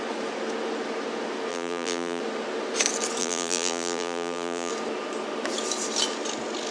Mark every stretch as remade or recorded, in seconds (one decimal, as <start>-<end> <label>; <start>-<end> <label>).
0.0-1.5 recorded; 1.5-2.2 remade; 2.2-3.2 recorded; 3.2-4.7 remade; 4.7-6.7 recorded